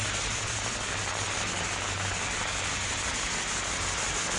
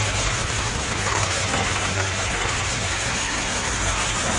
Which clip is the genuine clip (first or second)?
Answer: first